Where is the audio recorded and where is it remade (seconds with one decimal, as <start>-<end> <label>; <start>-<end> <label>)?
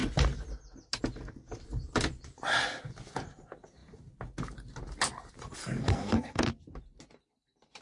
0.0-5.6 recorded; 5.6-6.4 remade; 6.4-7.8 recorded